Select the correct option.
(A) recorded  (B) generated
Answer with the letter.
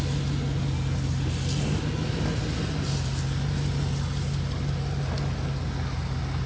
A